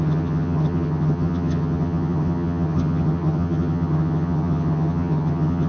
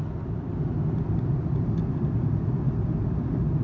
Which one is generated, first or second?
first